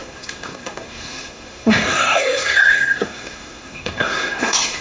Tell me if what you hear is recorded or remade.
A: remade